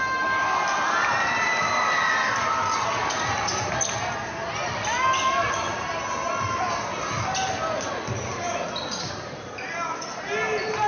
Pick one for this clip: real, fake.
real